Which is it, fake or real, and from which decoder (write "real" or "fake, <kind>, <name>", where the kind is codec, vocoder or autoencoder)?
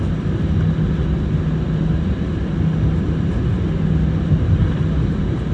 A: real